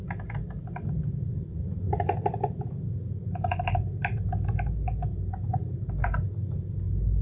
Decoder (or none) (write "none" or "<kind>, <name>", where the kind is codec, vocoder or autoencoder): none